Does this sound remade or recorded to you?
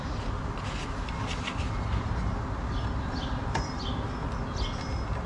recorded